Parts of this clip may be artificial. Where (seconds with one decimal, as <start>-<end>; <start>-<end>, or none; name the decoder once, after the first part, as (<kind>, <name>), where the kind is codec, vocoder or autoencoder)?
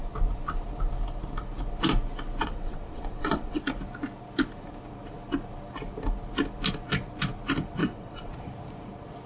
2.4-3.6 (vocoder, WaveNeXt); 7.8-8.3